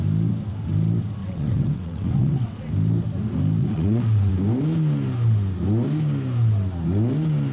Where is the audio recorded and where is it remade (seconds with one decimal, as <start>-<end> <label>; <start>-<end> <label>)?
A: 0.0-1.2 recorded; 1.2-2.7 remade; 2.7-3.6 recorded; 3.6-4.3 remade; 4.3-7.5 recorded